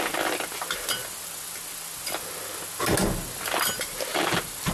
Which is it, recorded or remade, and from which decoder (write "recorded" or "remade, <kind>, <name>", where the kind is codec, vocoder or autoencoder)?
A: recorded